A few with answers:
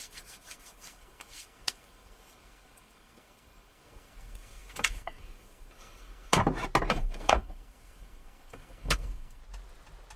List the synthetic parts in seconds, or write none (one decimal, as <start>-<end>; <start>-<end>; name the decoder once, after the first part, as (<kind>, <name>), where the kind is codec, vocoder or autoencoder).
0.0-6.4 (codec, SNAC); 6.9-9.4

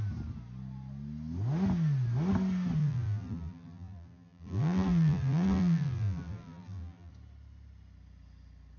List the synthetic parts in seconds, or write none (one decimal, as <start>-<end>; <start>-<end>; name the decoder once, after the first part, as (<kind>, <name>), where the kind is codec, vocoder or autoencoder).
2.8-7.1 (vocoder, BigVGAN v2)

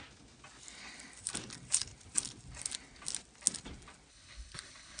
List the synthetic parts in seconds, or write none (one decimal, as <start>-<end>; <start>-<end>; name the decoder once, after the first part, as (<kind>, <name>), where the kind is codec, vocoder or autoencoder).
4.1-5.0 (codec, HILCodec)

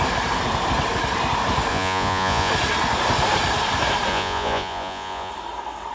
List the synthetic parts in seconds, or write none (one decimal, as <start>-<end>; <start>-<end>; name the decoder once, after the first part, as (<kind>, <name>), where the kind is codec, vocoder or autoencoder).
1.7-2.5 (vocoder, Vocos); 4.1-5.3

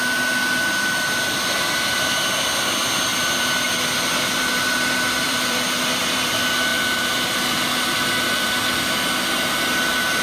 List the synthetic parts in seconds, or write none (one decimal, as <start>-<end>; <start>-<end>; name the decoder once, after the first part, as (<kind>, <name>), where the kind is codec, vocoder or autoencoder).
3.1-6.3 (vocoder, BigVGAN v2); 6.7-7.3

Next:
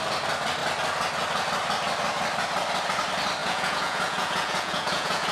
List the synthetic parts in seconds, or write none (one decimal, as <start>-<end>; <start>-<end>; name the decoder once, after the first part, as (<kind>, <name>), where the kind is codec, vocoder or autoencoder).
3.4-5.3 (vocoder, Vocos)

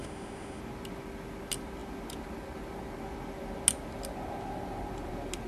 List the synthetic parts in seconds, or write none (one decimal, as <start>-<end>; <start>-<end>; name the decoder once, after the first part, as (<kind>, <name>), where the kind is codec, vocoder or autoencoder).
0.0-0.6 (autoencoder, DAC-VAE)